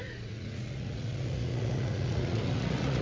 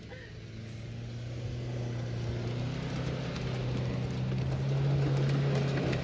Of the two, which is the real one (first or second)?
second